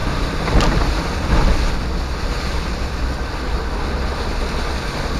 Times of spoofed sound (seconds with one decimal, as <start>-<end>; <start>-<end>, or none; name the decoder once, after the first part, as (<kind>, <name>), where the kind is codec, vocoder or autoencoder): none